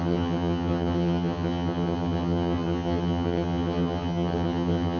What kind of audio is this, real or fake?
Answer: fake